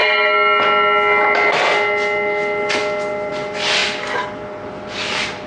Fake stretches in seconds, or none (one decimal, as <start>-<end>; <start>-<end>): none